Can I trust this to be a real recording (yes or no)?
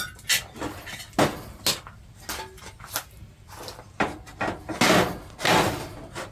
yes